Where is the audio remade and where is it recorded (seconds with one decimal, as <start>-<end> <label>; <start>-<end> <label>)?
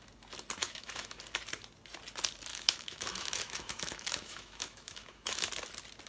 0.0-0.6 recorded; 0.6-1.2 remade; 1.2-2.5 recorded; 2.5-5.5 remade; 5.5-6.1 recorded